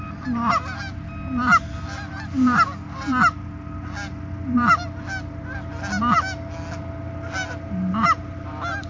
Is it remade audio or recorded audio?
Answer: recorded